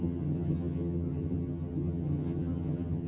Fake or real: fake